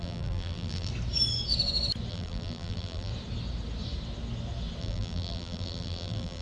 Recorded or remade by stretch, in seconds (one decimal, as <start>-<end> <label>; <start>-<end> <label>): 0.0-0.9 remade; 0.9-2.1 recorded; 2.1-3.1 remade; 3.1-4.8 recorded; 4.8-6.4 remade